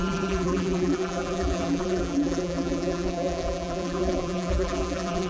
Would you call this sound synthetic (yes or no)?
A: yes